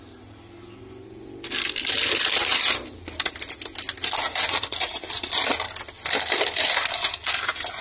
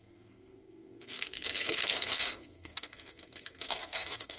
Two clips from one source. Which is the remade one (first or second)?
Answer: second